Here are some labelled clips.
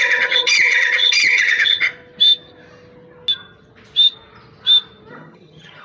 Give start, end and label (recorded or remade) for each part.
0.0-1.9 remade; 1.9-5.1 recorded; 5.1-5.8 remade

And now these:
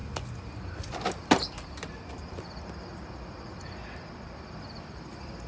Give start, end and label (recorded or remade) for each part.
0.0-5.5 recorded

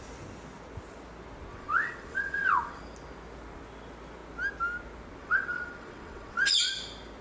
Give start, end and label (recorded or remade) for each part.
0.0-1.5 recorded; 1.5-2.8 remade; 2.8-5.2 recorded; 5.2-6.7 remade; 6.7-7.2 recorded

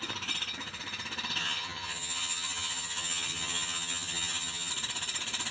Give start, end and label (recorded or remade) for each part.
0.0-1.4 recorded; 1.4-4.7 remade; 4.7-5.5 recorded

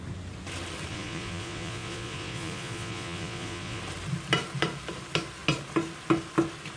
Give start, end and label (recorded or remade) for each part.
0.0-0.9 recorded; 0.9-3.8 remade; 3.8-6.8 recorded

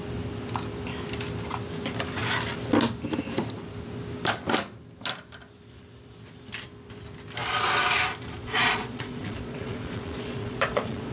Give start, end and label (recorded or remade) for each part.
0.0-8.4 recorded; 8.4-11.1 remade

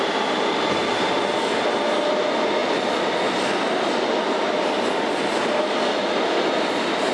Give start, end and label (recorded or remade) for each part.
0.0-7.1 recorded

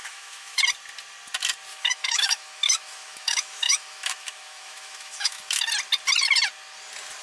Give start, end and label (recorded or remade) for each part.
0.0-0.6 remade; 0.6-1.7 recorded; 1.7-5.6 remade; 5.6-7.2 recorded